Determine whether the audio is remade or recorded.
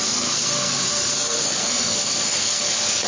remade